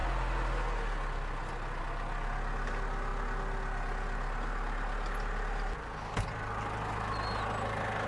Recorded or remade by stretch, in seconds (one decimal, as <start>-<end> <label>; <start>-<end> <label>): 0.0-8.1 recorded